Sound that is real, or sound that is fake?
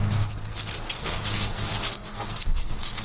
fake